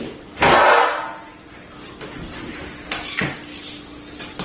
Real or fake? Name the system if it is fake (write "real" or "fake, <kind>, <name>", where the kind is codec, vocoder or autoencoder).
real